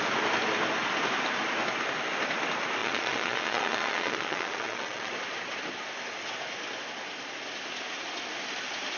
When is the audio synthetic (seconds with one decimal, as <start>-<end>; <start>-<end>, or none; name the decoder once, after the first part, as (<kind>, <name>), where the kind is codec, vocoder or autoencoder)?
2.8-5.1 (vocoder, Vocos)